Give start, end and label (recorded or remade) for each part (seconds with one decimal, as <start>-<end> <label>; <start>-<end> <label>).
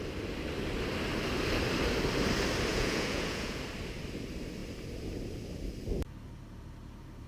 0.0-2.7 recorded; 2.7-3.6 remade; 3.6-7.3 recorded